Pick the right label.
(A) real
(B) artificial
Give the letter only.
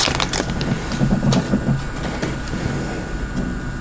A